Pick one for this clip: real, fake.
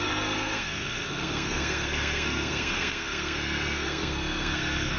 fake